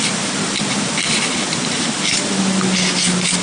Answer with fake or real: real